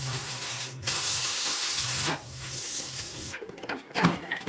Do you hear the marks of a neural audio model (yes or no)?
yes